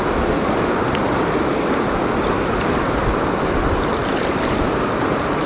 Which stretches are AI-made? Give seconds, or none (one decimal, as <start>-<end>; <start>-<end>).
none